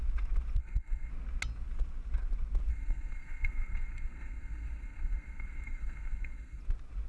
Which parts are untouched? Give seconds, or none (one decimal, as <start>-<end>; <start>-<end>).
0.0-0.6; 1.1-2.7; 6.6-7.1